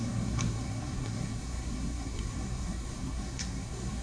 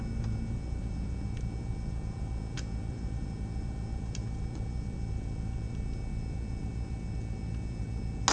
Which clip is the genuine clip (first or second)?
second